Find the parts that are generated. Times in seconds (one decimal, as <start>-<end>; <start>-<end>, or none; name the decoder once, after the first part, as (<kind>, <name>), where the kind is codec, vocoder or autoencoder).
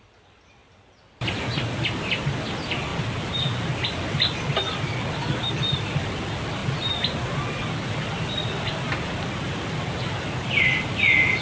0.0-6.6 (vocoder, BigVGAN v2); 7.7-11.4